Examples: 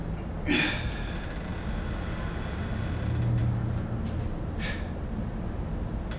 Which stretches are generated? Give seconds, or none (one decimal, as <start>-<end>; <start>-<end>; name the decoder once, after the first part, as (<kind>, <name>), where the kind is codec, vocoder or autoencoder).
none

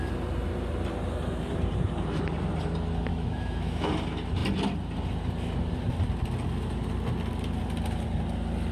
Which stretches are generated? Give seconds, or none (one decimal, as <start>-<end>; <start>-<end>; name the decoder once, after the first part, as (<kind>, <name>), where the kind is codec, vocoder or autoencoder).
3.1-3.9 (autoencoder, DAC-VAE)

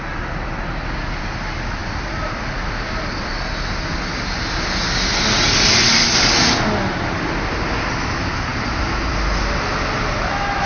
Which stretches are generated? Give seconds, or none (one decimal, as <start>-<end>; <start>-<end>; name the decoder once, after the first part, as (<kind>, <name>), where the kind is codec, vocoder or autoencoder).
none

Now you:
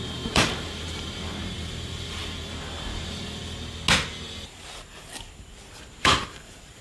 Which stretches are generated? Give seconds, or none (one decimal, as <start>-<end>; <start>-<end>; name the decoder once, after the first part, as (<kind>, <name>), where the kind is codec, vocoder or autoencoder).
0.0-3.4 (vocoder, BigVGAN v2); 6.0-6.8